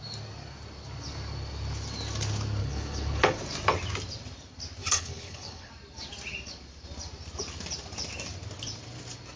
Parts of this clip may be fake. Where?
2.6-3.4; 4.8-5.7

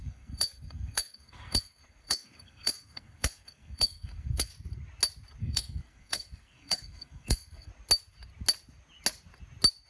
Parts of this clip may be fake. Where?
0.0-4.5; 5.4-7.7